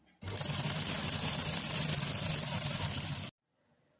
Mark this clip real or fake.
real